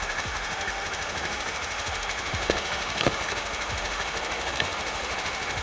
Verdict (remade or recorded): remade